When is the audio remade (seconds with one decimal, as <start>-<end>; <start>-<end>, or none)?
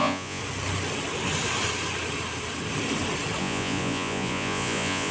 0.0-0.4; 3.4-5.1